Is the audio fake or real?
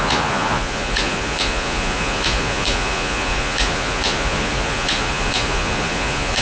fake